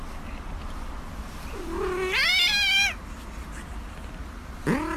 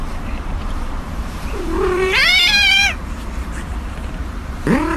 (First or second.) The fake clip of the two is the second